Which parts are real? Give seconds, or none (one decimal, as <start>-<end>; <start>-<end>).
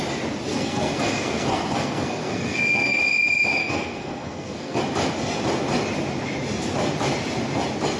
0.0-0.5; 3.0-3.6; 4.8-8.0